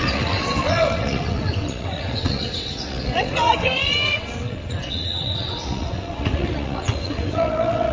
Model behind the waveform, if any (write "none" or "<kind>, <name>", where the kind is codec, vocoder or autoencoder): vocoder, WaveNeXt